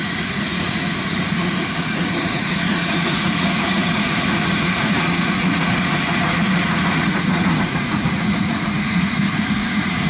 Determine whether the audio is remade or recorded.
remade